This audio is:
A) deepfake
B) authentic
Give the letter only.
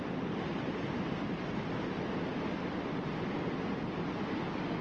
B